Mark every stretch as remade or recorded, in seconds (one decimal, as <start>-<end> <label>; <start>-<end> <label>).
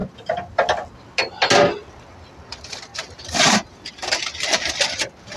0.0-5.4 recorded